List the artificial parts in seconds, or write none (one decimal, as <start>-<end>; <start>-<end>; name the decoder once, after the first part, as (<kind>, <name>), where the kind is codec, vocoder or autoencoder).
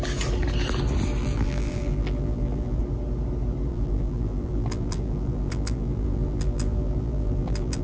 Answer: 1.2-2.8 (vocoder, BigVGAN v2); 3.7-7.8